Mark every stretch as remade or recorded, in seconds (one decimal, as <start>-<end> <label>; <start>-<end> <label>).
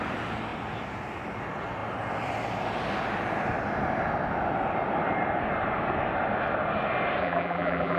0.0-7.2 recorded; 7.2-8.0 remade